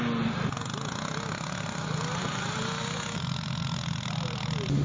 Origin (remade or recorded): recorded